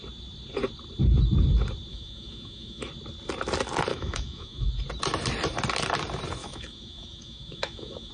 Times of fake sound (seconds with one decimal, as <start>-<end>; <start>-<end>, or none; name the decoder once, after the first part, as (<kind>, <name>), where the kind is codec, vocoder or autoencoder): 1.9-2.9 (autoencoder, DAC-VAE); 3.9-4.7; 6.4-8.1